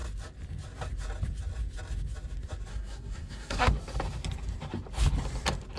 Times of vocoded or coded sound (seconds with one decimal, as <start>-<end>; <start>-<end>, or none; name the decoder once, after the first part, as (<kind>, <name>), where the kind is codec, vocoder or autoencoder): 2.7-3.7 (codec, SNAC)